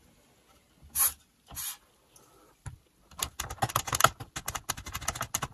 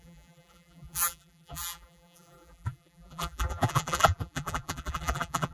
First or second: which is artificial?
second